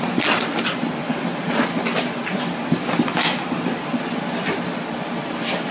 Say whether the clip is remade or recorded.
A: recorded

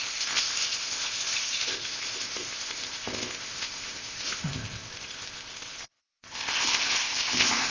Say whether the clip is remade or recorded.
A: remade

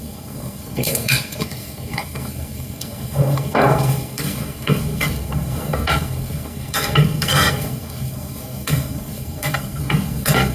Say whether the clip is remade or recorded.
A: remade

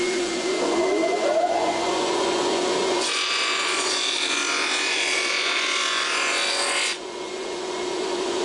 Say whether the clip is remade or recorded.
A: remade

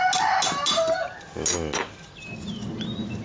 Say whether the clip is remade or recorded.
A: recorded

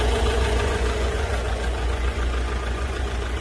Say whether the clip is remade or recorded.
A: remade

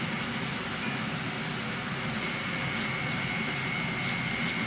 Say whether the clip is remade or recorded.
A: recorded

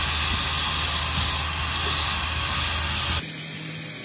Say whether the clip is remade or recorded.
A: recorded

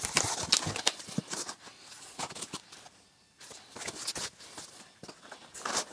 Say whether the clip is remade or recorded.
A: recorded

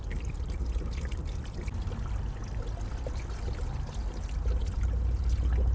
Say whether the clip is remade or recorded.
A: recorded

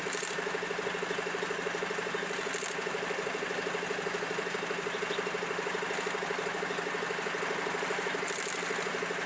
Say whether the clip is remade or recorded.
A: recorded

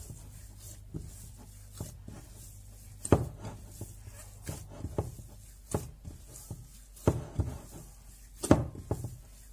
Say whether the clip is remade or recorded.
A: recorded